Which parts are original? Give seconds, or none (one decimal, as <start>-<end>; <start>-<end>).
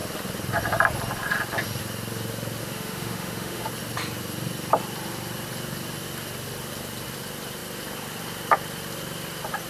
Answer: 0.0-2.6; 3.7-9.7